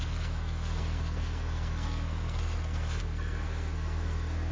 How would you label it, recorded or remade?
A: remade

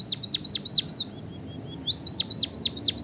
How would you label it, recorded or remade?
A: recorded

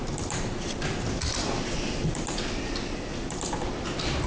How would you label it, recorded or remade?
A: remade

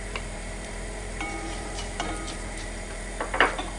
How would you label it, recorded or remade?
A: remade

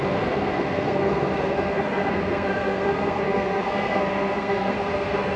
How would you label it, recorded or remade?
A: remade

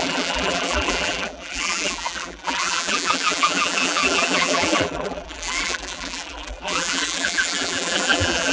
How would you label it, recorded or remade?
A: remade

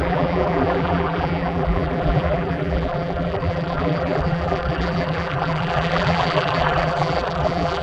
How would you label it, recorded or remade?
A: remade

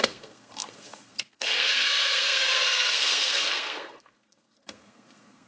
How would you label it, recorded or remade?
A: remade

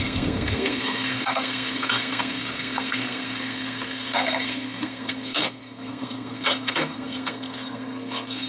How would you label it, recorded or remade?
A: remade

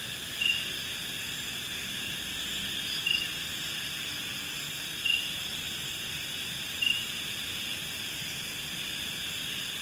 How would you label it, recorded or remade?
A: recorded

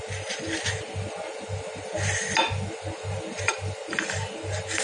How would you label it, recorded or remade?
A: recorded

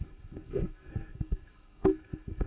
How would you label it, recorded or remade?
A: remade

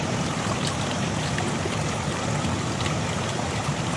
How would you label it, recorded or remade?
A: recorded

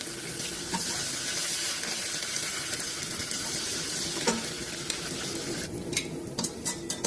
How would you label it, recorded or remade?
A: recorded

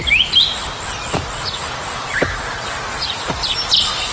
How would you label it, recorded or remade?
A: recorded